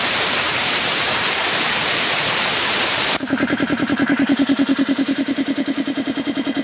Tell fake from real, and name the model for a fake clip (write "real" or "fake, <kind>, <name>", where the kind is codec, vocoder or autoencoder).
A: fake, vocoder, BigVGAN v2